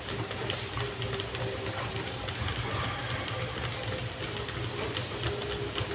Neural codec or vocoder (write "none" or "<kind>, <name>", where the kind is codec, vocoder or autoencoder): none